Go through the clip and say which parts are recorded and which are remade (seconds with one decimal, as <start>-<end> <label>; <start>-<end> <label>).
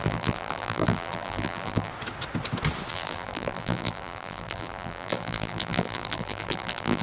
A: 0.0-1.9 remade; 1.9-2.9 recorded; 2.9-7.0 remade